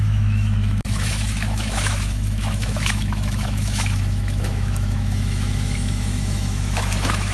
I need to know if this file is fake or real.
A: fake